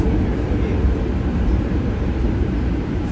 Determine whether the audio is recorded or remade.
remade